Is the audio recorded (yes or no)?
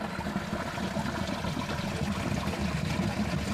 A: yes